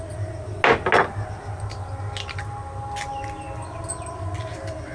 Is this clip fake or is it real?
real